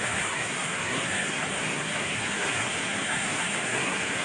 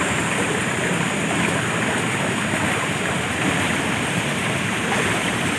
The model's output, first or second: first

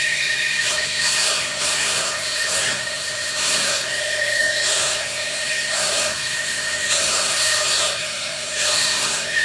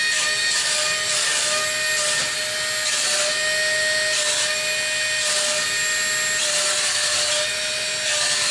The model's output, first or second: first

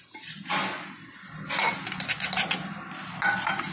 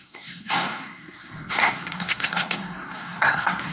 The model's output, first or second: second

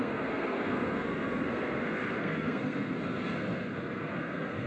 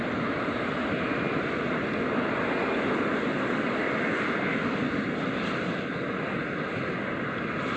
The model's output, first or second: first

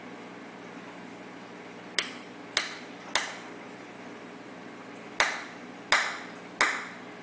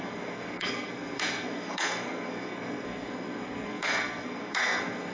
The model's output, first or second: second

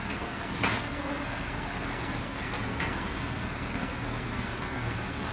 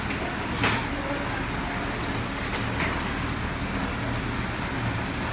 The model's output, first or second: first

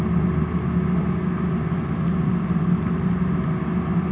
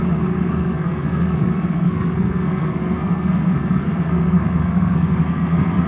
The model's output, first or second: second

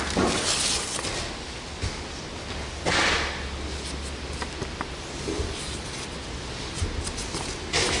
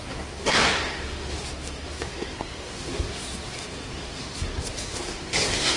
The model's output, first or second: second